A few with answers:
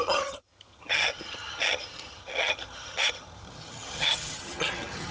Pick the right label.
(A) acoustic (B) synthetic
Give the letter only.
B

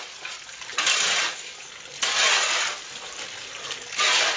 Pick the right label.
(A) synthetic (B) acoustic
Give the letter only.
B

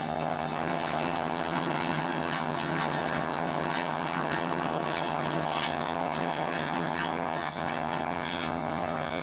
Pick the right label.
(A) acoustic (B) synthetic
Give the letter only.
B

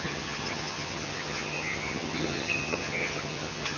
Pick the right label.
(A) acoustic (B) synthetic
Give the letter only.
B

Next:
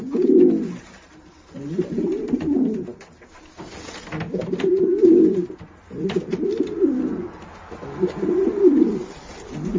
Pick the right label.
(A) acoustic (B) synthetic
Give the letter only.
A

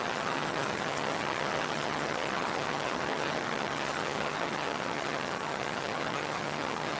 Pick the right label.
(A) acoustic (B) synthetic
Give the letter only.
B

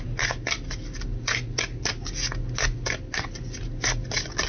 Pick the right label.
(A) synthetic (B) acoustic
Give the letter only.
B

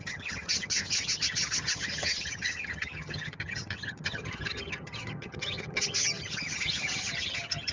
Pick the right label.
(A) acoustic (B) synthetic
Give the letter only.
B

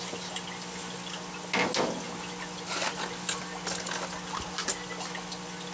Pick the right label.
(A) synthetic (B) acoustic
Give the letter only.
B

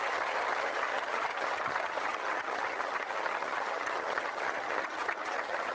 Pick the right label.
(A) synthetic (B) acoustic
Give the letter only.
A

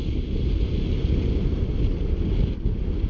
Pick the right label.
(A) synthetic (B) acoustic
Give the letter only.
B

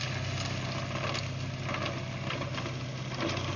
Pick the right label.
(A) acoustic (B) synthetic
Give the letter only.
A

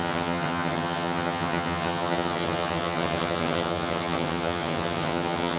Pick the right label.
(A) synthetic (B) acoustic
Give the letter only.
A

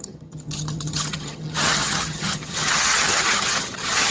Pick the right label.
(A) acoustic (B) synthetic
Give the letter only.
B